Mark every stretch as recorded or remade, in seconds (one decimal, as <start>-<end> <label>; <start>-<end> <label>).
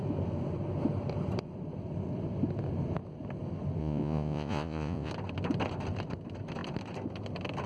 0.0-3.8 recorded; 3.8-5.1 remade; 5.1-7.7 recorded